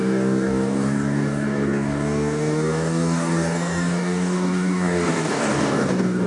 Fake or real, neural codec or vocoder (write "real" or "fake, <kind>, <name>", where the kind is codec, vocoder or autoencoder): fake, codec, DAC